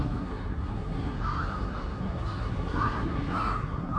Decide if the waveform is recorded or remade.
remade